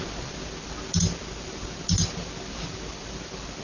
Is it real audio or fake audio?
real